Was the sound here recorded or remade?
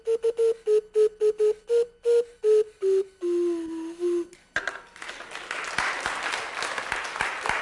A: recorded